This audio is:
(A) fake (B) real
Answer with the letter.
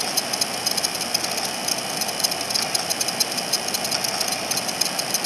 B